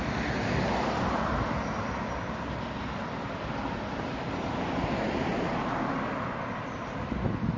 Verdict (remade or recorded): recorded